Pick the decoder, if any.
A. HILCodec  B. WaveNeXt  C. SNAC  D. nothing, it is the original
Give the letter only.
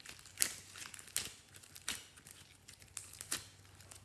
D